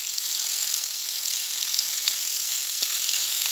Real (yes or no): no